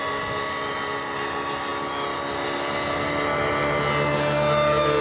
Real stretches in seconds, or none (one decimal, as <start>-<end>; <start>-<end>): 0.0-5.0